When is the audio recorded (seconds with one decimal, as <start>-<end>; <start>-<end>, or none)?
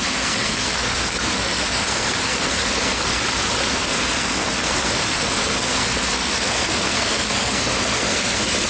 3.2-3.7